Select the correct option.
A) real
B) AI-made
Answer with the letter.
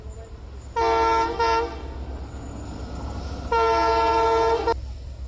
A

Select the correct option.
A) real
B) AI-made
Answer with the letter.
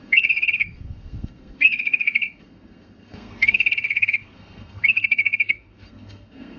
B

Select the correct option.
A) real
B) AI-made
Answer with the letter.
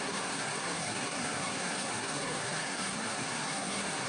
B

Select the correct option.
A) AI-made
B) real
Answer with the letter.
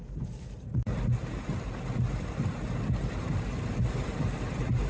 B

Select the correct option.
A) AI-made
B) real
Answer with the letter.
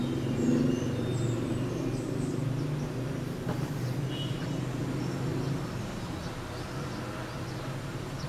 B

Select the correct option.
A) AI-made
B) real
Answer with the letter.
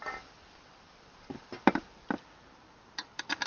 B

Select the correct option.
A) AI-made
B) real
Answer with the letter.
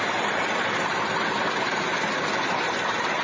B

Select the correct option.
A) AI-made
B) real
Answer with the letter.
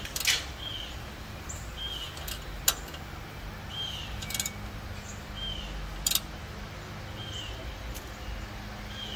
B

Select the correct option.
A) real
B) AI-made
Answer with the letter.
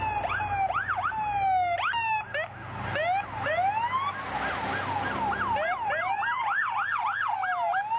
A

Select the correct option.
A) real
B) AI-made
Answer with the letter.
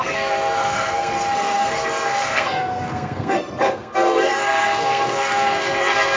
B